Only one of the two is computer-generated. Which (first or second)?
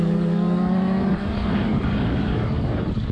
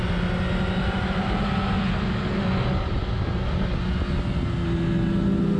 first